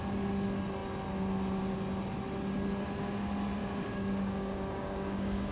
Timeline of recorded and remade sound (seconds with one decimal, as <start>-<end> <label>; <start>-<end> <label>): 0.0-3.6 recorded; 3.6-5.5 remade